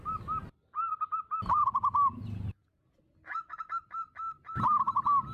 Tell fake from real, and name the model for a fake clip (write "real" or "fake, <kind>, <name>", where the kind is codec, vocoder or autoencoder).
real